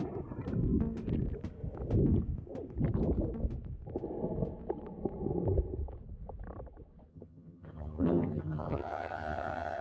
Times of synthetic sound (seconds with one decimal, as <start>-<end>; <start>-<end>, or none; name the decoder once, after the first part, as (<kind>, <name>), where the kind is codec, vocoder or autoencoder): 7.1-9.8 (vocoder, HiFi-GAN)